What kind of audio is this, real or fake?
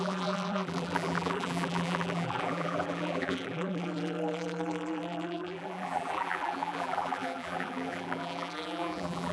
fake